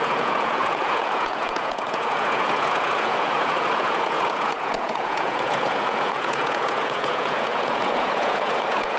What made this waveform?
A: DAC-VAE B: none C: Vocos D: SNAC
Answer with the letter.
C